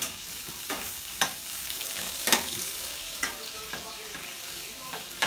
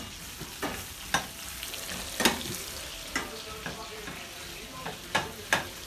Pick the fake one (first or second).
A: first